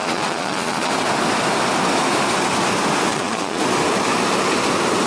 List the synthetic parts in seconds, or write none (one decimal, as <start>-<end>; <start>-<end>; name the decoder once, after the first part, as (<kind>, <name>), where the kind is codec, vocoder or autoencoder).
0.0-0.9 (vocoder, Vocos); 3.1-3.6